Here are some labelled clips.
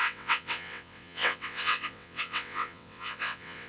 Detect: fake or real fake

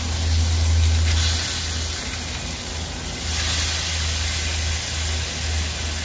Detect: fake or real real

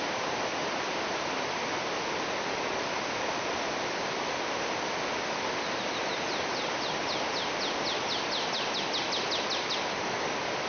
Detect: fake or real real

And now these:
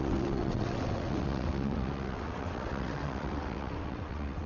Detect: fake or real fake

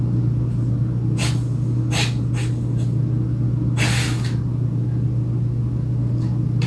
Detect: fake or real real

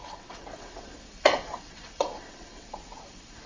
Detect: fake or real fake